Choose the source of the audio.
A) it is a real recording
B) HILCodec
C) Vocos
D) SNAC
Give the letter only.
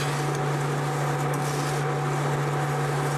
A